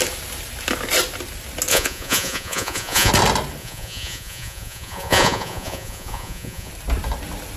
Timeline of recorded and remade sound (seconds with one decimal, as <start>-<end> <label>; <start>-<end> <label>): 0.0-1.7 recorded; 1.7-3.1 remade; 3.1-3.6 recorded; 3.6-6.7 remade; 6.7-7.6 recorded